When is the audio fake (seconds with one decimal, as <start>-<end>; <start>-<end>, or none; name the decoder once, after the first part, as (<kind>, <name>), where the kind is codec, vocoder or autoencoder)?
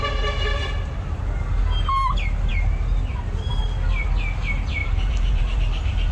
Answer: 4.8-6.1 (vocoder, BigVGAN v2)